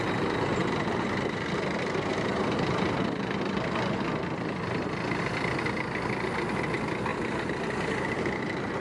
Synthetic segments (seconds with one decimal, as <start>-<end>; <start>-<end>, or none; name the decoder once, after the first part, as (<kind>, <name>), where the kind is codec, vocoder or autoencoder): 0.6-3.8 (vocoder, BigVGAN v2); 7.1-8.8